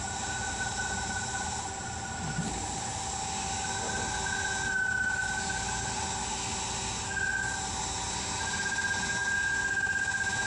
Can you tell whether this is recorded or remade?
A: recorded